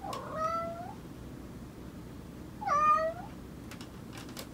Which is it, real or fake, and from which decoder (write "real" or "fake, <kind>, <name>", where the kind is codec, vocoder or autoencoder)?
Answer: real